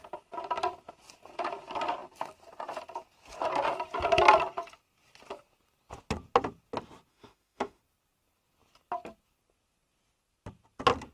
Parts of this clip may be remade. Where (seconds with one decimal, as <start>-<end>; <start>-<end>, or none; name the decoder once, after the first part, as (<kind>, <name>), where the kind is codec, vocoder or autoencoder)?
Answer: 7.1-7.8 (autoencoder, DAC-VAE)